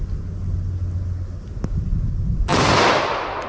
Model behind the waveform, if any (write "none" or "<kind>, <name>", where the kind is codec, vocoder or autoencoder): none